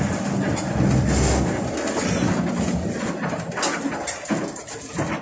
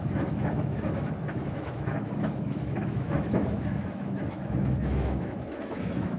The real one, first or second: first